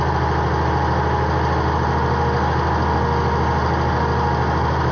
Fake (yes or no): no